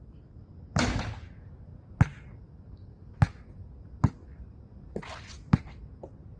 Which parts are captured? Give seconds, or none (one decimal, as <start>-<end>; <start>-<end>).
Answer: 0.0-6.4